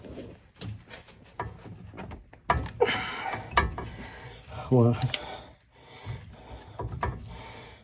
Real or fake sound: real